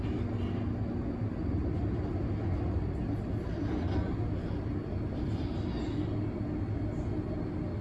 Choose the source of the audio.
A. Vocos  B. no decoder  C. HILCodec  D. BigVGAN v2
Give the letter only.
B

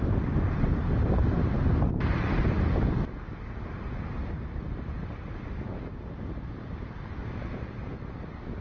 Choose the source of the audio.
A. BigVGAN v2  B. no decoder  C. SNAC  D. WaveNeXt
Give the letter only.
B